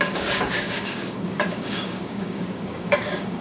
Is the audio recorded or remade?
remade